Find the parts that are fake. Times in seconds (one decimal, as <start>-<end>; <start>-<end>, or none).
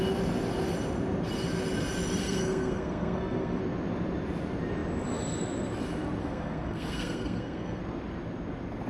2.2-3.6; 6.2-7.8